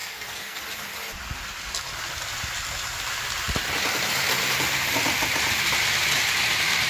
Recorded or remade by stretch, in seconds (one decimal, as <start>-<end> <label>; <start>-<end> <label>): 0.0-0.6 remade; 0.6-6.9 recorded